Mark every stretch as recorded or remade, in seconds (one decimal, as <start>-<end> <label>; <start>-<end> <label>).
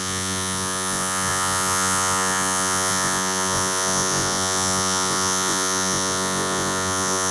0.0-7.3 remade